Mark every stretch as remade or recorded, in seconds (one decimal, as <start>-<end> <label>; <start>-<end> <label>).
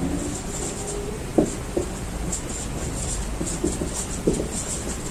0.0-5.1 recorded